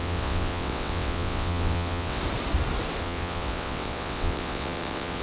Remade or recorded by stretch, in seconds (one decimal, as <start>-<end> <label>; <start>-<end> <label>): 0.0-2.2 remade; 2.2-3.0 recorded; 3.0-5.2 remade